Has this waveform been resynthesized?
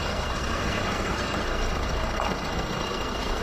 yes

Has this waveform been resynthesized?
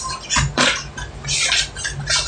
no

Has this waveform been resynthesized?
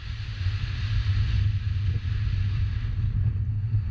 no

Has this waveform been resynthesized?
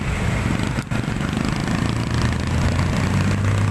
no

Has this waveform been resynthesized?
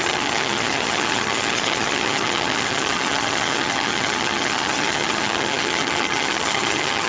yes